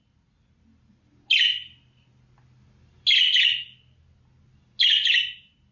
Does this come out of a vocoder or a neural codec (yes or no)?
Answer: no